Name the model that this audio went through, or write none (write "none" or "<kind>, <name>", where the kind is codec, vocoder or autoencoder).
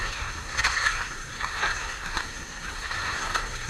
codec, SNAC